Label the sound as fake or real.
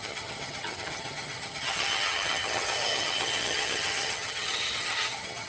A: fake